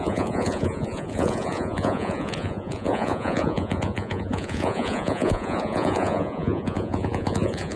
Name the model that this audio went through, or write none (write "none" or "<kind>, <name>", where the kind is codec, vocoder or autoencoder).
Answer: vocoder, Vocos